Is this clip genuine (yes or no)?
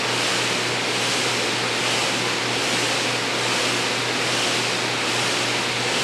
yes